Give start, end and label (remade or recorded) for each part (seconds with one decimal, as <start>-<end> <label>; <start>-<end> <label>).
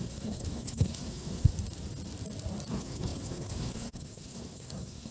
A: 0.0-1.5 remade; 1.5-2.7 recorded; 2.7-5.1 remade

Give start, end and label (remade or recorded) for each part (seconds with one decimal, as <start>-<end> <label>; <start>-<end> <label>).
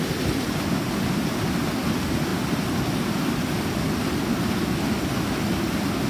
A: 0.0-6.1 recorded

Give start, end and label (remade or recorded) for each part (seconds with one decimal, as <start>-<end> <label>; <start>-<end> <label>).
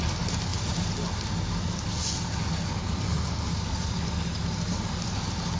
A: 0.0-5.6 recorded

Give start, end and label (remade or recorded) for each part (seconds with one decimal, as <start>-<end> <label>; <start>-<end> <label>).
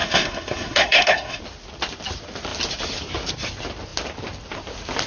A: 0.0-1.4 remade; 1.4-5.1 recorded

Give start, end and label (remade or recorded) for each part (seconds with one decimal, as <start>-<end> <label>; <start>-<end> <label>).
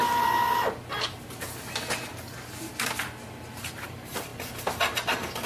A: 0.0-2.6 recorded; 2.6-5.5 remade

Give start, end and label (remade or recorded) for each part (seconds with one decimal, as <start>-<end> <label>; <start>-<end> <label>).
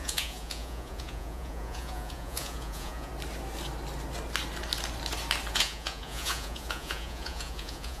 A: 0.0-3.1 remade; 3.1-5.5 recorded; 5.5-8.0 remade